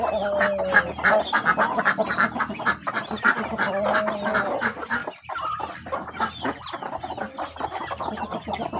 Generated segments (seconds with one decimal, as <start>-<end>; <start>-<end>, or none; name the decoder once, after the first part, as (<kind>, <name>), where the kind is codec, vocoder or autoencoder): none